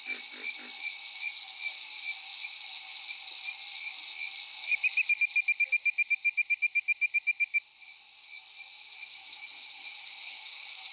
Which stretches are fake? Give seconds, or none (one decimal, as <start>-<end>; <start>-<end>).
9.0-10.9